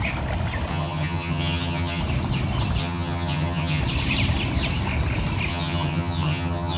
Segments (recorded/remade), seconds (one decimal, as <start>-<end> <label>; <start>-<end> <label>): 0.0-0.7 recorded; 0.7-2.0 remade; 2.0-2.8 recorded; 2.8-3.8 remade; 3.8-5.5 recorded; 5.5-6.8 remade